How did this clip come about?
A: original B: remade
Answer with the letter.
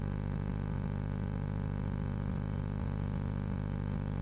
B